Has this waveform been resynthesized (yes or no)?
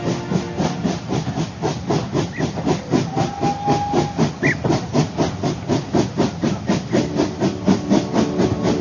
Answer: no